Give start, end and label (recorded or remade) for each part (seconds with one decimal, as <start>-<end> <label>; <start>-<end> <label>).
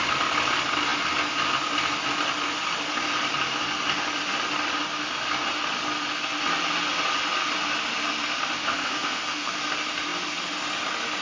0.0-8.6 recorded; 8.6-9.6 remade; 9.6-11.2 recorded